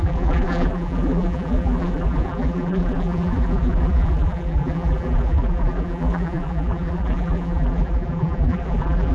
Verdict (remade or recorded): remade